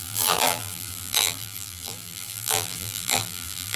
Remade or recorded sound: remade